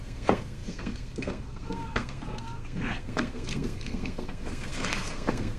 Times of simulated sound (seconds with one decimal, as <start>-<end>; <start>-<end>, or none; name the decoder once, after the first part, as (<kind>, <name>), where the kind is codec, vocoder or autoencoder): 0.0-5.6 (codec, SNAC)